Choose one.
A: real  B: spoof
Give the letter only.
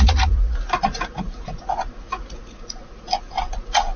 B